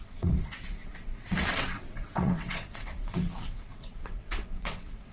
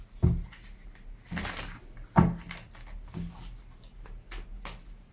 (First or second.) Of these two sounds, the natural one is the second